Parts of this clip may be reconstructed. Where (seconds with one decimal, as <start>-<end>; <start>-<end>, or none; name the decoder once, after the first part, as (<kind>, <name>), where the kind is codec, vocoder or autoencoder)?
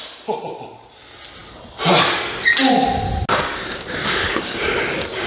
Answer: 3.3-5.3 (codec, DAC)